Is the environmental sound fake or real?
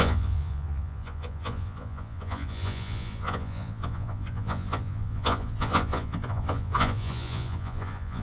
fake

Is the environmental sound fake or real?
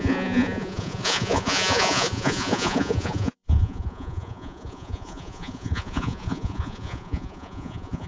fake